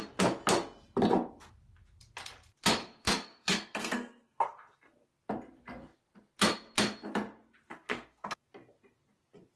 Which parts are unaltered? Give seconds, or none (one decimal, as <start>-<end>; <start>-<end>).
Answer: 0.0-2.8; 5.1-7.7; 8.5-9.6